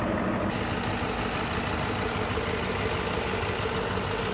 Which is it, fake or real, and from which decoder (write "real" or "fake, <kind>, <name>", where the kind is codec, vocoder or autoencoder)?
real